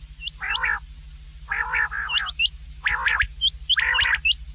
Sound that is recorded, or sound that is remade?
recorded